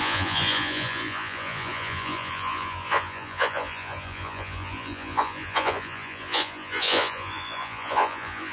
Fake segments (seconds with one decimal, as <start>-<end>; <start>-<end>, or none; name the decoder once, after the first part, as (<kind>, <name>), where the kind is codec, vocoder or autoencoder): 0.0-8.5 (vocoder, Vocos)